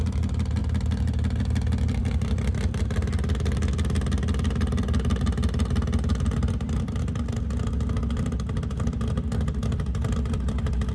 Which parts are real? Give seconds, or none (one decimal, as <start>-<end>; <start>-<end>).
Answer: 0.0-10.9